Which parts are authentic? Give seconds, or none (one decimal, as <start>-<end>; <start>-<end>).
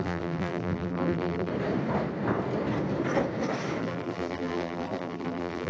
1.5-3.8